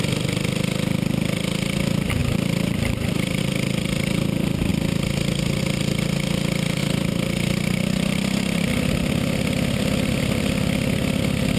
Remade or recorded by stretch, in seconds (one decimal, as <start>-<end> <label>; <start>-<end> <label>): 0.0-2.2 recorded; 2.2-3.4 remade; 3.4-6.8 recorded; 6.8-8.7 remade; 8.7-11.6 recorded